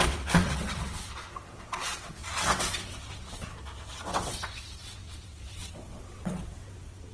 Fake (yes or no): yes